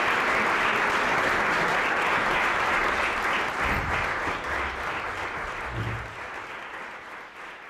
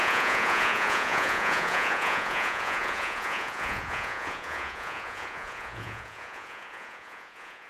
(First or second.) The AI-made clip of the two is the second